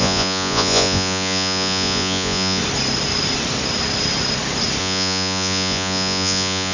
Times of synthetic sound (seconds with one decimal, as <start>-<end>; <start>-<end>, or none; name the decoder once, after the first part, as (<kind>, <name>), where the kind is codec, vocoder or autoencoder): 0.0-2.6 (vocoder, Vocos); 4.8-6.7